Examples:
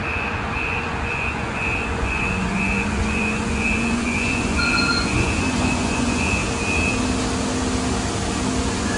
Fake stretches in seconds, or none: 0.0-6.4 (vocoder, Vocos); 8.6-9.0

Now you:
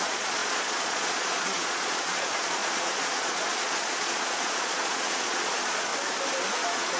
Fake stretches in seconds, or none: 0.0-5.9 (vocoder, Vocos); 6.5-7.0

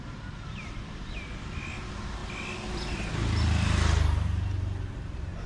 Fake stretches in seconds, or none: none